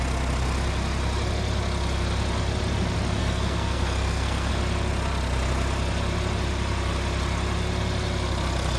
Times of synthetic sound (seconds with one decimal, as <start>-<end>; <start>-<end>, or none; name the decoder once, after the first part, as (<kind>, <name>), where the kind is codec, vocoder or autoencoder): 3.2-4.5 (codec, SNAC)